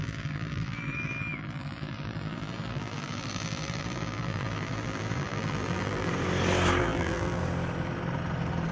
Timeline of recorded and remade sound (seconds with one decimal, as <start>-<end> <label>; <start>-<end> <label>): 0.0-6.1 remade; 6.1-6.8 recorded; 6.8-7.4 remade; 7.4-8.7 recorded

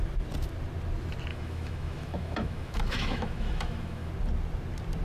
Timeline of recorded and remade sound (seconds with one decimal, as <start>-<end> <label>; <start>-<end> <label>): 0.0-1.3 recorded; 1.3-4.1 remade; 4.1-5.0 recorded

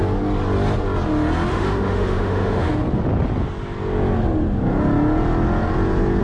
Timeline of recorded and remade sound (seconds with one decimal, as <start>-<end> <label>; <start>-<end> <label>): 0.0-1.5 recorded; 1.5-2.7 remade; 2.7-6.2 recorded

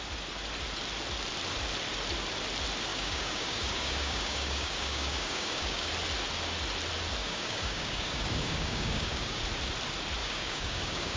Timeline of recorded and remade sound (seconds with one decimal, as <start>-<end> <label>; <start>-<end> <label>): 0.0-2.9 recorded; 2.9-5.9 remade; 5.9-7.2 recorded; 7.2-9.4 remade; 9.4-10.2 recorded; 10.2-11.2 remade

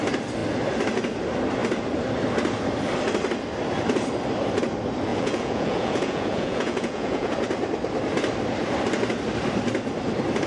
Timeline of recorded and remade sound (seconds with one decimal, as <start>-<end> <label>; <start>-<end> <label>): 0.0-5.1 recorded; 5.1-7.3 remade; 7.3-10.5 recorded

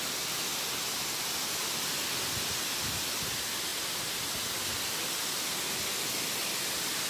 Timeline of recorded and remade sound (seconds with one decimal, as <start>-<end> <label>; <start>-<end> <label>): 0.0-0.5 recorded; 0.5-1.0 remade; 1.0-3.7 recorded; 3.7-4.2 remade; 4.2-7.1 recorded

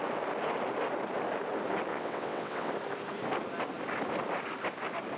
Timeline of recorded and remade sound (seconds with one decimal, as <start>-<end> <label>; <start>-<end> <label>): 0.0-1.9 recorded; 1.9-2.7 remade; 2.7-5.2 recorded

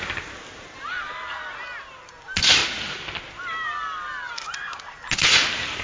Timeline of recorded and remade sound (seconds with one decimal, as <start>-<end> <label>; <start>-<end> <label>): 0.0-5.8 recorded